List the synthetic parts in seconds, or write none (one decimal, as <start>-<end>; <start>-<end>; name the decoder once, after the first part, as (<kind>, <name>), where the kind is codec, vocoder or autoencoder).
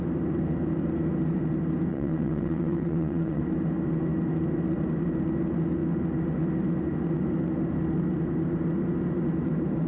1.9-3.4 (vocoder, WaveNeXt)